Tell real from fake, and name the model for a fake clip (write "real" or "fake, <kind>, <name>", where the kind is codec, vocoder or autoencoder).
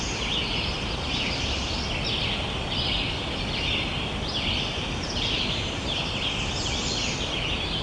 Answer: real